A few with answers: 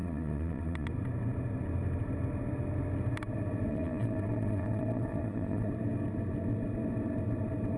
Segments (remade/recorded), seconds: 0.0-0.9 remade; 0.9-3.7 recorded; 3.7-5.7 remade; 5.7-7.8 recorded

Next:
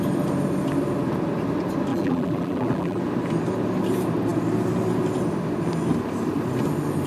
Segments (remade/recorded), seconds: 0.0-1.9 recorded; 1.9-3.0 remade; 3.0-7.1 recorded